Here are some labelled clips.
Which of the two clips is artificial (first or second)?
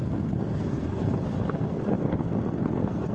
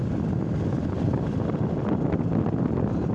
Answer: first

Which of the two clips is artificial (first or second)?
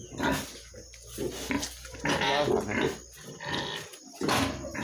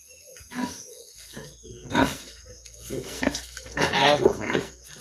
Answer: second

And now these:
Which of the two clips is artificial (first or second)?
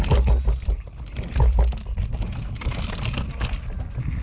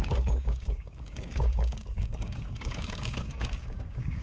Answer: second